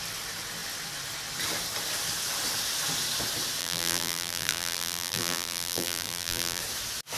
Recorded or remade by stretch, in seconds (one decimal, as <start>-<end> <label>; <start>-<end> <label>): 0.0-3.6 recorded; 3.6-6.6 remade; 6.6-7.2 recorded